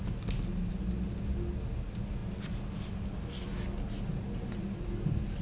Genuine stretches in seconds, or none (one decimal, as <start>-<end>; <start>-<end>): 0.0-5.4